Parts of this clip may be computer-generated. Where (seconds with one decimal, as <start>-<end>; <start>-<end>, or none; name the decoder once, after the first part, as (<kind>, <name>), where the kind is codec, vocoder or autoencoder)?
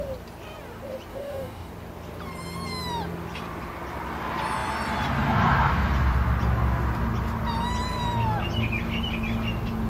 1.1-1.7 (codec, DAC)